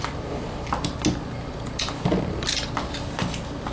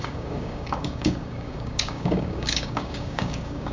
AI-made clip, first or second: second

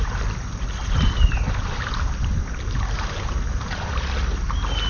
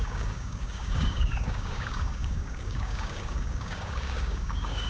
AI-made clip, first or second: second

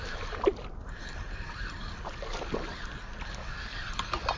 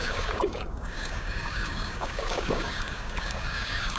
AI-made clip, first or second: second